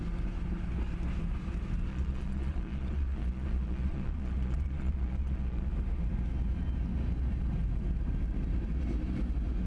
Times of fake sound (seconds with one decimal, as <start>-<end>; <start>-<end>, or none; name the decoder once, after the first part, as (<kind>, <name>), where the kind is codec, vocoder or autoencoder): 1.9-5.7 (vocoder, Vocos)